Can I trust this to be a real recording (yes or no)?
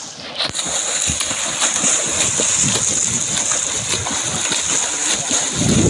yes